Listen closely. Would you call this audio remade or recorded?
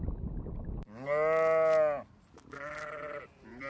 recorded